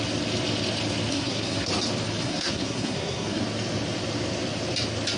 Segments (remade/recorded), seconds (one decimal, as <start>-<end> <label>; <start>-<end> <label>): 0.0-1.1 recorded; 1.1-1.7 remade; 1.7-2.2 recorded; 2.2-3.4 remade; 3.4-5.2 recorded